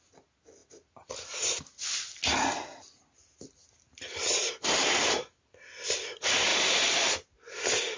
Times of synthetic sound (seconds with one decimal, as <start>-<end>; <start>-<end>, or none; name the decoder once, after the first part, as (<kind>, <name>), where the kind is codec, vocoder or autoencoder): none